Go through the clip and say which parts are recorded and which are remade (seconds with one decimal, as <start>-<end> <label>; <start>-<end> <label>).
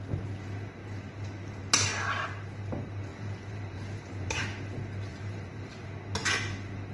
0.0-3.1 recorded; 3.1-4.4 remade; 4.4-5.1 recorded; 5.1-5.9 remade; 5.9-6.9 recorded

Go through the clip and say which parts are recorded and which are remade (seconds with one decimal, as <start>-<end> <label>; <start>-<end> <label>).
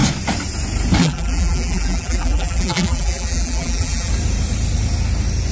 0.0-1.0 recorded; 1.0-4.1 remade; 4.1-5.5 recorded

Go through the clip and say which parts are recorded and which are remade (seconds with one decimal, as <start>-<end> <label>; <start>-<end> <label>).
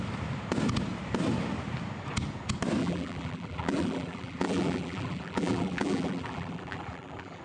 0.0-2.8 recorded; 2.8-7.4 remade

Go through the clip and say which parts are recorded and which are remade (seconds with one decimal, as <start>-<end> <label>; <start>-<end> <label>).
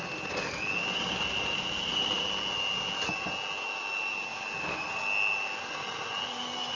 0.0-6.8 recorded